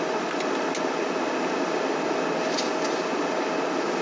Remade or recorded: recorded